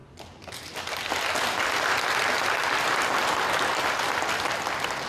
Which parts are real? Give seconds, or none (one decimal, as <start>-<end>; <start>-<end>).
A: 0.0-5.1